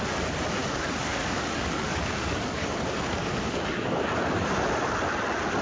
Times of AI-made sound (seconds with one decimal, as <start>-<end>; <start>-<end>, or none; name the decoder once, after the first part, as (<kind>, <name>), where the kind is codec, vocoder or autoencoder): 0.6-4.0 (codec, DAC)